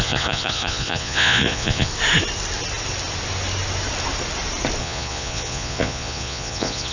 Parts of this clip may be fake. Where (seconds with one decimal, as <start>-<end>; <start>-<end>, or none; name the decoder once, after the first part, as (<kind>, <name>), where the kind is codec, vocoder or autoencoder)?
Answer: 0.0-1.9 (vocoder, Vocos); 4.8-6.9